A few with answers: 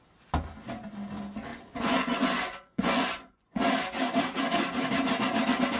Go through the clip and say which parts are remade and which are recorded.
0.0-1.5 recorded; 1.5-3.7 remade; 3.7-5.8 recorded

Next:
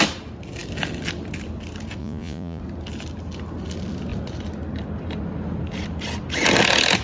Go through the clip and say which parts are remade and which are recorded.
0.0-2.0 recorded; 2.0-2.6 remade; 2.6-7.0 recorded